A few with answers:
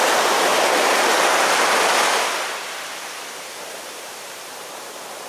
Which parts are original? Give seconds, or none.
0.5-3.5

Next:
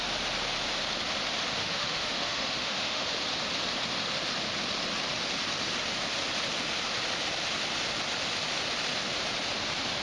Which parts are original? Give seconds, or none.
0.0-1.6; 3.1-10.0

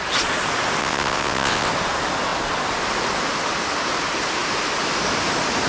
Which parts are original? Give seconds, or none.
0.0-0.8; 1.7-5.7

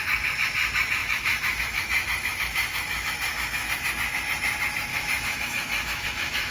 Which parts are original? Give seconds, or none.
0.0-1.0; 3.9-4.9

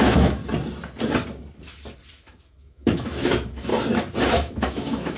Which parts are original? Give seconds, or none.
0.4-2.1; 3.7-4.3

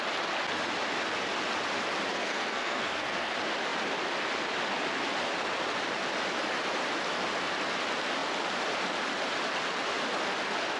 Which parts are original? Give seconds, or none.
0.0-2.1; 3.3-10.8